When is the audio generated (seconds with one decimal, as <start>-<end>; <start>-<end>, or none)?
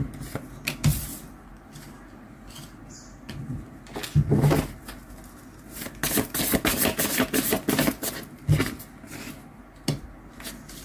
none